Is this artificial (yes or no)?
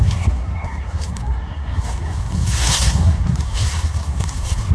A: yes